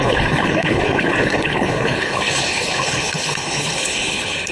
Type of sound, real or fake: fake